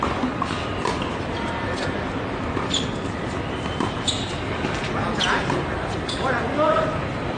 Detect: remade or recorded recorded